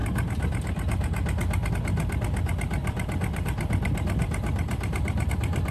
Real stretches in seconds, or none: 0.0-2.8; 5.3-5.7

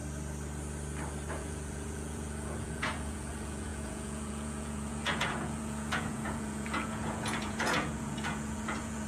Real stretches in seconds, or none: 0.0-1.3

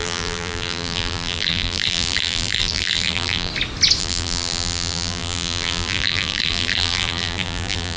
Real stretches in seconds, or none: 3.5-4.0

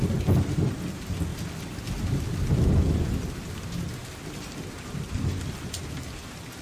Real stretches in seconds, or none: 0.0-6.6

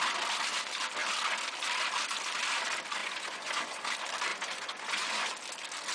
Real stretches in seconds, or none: 0.0-3.0; 3.8-4.3; 5.3-5.9

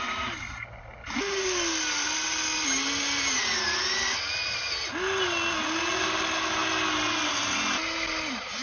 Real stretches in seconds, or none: 0.0-8.6